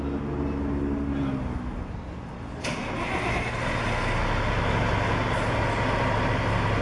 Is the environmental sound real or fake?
real